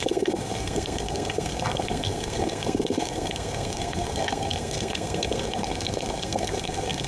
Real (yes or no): no